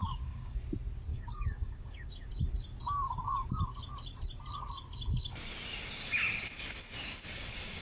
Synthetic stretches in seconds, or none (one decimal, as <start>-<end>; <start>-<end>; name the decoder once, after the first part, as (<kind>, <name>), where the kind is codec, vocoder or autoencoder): 0.0-0.6 (codec, DAC); 1.1-2.1; 6.0-7.8